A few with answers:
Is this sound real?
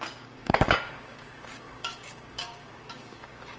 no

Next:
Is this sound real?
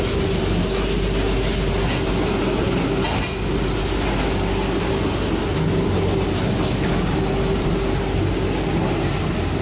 yes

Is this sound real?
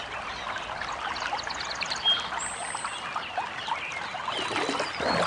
yes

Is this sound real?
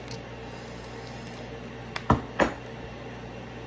yes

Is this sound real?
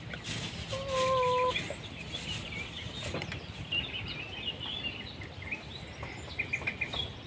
yes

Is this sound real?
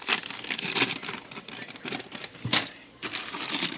yes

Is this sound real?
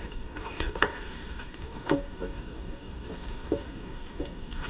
no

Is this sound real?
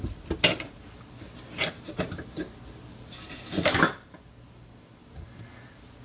yes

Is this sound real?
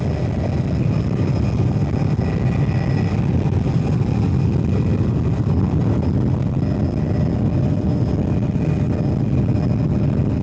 yes